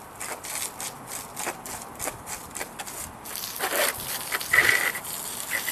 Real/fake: fake